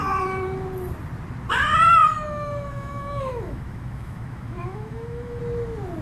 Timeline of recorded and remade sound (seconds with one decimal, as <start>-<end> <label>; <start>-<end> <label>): 0.0-2.0 recorded; 2.0-5.4 remade; 5.4-6.0 recorded